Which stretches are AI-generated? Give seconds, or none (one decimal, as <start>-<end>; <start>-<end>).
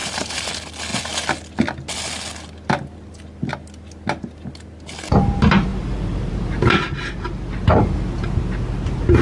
0.0-0.5; 5.7-6.3